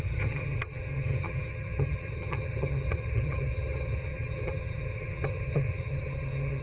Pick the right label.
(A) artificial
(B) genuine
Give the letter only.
A